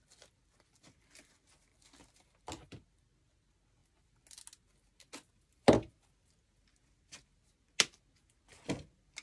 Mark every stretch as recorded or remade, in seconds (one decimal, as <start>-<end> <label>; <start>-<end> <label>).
0.0-9.2 recorded